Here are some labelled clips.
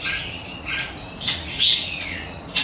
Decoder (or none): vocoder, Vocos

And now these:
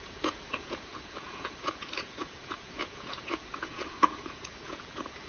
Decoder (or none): vocoder, Vocos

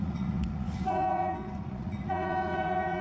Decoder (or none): vocoder, Vocos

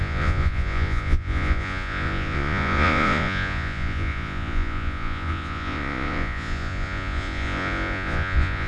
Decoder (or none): vocoder, Vocos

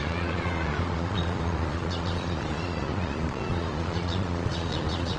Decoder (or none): vocoder, Vocos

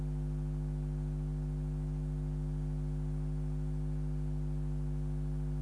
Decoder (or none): none